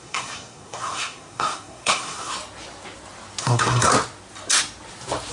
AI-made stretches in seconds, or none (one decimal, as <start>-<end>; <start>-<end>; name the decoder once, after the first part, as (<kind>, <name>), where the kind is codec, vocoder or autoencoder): 0.0-2.3 (codec, SNAC); 3.4-3.9